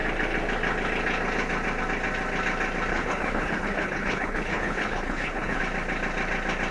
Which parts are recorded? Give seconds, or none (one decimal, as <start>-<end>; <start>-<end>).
0.0-2.9; 5.6-6.7